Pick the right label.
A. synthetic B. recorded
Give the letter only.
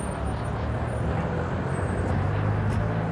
B